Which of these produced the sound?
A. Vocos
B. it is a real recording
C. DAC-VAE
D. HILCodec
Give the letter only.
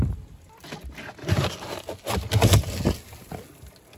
B